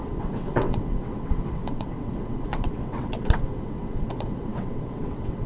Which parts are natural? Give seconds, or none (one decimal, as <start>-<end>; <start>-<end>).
none